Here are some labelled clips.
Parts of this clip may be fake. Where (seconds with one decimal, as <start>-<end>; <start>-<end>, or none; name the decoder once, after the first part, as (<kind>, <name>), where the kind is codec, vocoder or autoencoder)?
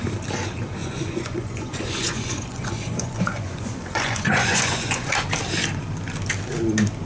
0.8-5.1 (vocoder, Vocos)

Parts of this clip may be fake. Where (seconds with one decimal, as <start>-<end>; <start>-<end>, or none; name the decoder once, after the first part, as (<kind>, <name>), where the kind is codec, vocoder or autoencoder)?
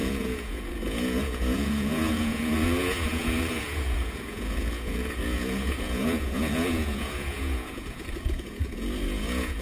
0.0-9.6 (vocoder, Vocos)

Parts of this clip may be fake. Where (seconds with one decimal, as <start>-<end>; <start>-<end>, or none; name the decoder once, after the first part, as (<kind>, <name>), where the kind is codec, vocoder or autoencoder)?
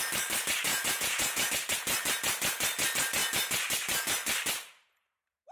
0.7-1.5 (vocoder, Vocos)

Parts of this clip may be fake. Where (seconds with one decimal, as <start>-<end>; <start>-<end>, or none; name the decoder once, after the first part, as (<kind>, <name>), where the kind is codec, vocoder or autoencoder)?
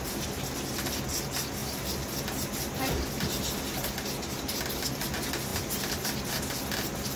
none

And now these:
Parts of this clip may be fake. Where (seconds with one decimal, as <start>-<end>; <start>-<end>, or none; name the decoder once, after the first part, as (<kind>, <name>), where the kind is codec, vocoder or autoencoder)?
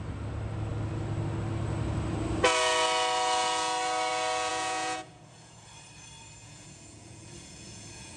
4.5-5.7 (vocoder, Vocos); 6.4-8.2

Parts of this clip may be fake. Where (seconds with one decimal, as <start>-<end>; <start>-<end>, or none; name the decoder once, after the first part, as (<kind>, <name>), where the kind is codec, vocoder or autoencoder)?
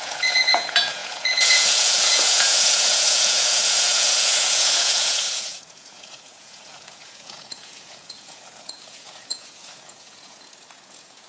0.0-11.3 (vocoder, Vocos)